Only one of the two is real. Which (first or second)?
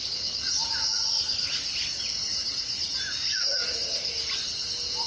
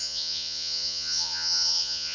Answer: first